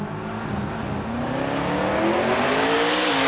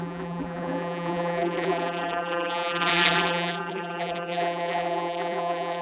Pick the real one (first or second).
first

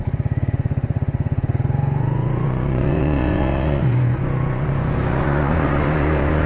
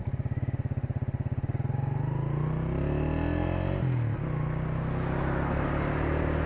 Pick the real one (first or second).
second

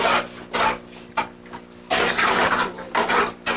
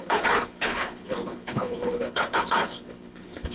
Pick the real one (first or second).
first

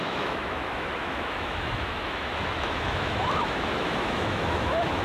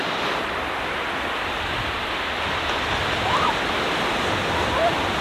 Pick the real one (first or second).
second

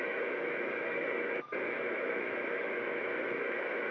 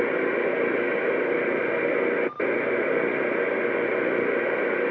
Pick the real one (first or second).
second